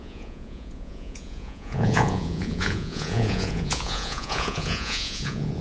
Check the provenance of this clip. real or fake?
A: fake